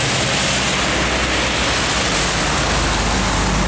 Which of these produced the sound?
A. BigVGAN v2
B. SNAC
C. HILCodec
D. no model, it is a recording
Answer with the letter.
D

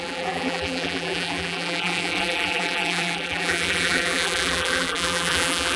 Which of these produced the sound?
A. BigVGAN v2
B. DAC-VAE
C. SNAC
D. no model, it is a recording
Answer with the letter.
A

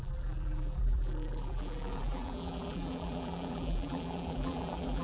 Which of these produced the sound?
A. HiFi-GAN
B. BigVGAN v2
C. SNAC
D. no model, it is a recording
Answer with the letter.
B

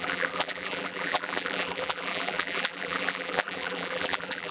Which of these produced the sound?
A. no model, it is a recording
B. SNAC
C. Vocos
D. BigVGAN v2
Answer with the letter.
D